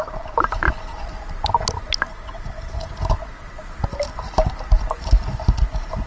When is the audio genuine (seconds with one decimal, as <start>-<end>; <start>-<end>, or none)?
0.0-2.1; 2.9-6.1